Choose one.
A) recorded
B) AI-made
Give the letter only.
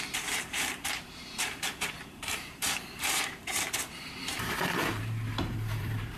B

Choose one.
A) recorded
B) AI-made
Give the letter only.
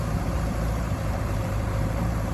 B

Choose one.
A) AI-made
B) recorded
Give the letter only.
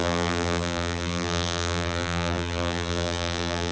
A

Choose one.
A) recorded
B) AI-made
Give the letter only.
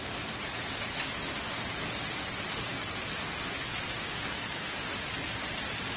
A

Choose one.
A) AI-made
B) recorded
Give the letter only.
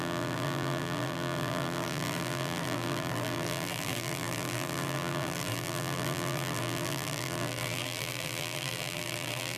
A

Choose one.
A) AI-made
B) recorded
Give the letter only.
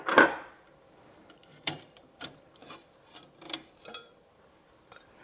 A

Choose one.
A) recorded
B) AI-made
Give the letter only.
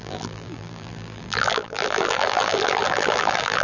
B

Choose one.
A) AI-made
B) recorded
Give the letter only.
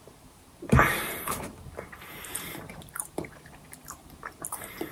A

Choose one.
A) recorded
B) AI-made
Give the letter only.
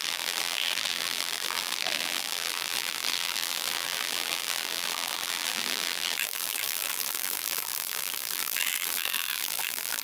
B